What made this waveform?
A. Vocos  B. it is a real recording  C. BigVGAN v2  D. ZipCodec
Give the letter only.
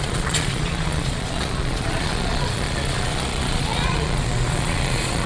A